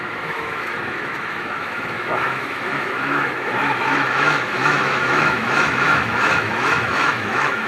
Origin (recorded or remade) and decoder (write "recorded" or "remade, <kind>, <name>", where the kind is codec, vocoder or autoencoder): remade, autoencoder, DAC-VAE